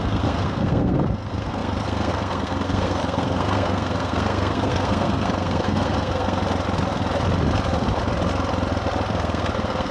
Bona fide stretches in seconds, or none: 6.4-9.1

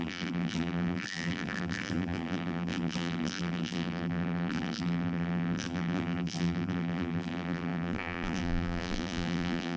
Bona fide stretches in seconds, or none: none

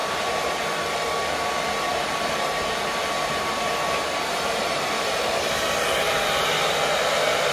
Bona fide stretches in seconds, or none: 0.5-1.9; 5.5-7.5

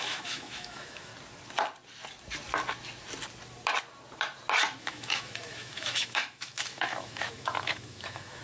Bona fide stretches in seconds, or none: 1.1-4.8

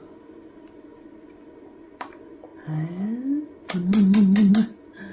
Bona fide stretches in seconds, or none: 0.0-5.1

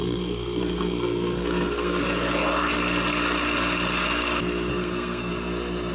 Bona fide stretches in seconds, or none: 2.0-4.7; 5.3-5.9

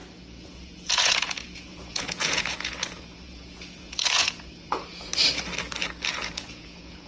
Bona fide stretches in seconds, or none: 5.1-6.1

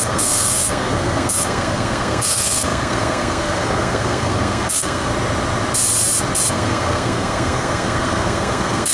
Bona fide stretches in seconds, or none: 5.1-6.5